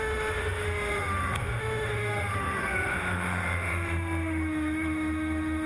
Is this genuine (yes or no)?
no